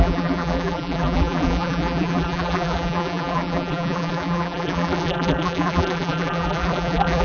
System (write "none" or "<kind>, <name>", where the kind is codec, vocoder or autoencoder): vocoder, BigVGAN v2